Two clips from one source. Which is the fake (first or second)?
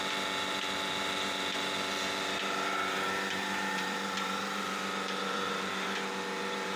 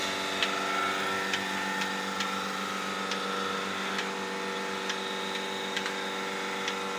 first